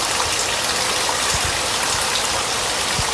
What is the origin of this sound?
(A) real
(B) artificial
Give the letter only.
A